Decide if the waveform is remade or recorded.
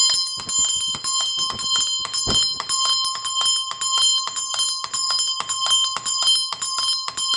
recorded